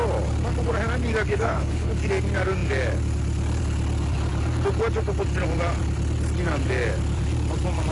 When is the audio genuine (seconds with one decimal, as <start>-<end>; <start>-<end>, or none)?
0.0-1.3; 1.9-7.9